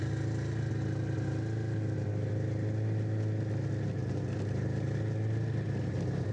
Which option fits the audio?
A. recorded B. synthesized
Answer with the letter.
A